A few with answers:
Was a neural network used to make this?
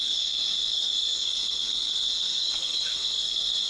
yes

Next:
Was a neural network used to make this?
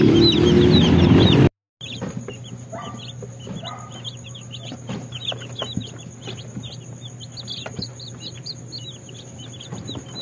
no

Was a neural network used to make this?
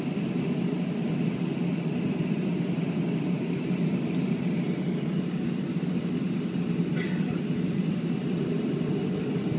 no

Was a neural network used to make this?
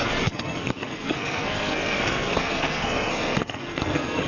yes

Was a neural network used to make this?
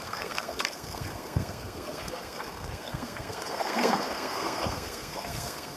yes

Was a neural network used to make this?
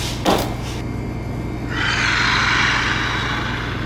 no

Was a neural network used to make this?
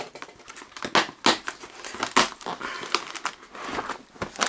no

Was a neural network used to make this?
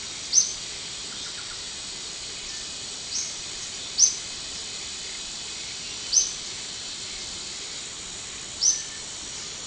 no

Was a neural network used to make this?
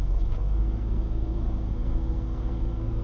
yes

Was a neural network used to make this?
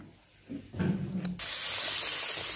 no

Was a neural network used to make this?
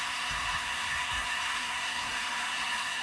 yes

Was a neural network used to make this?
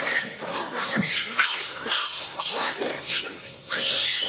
yes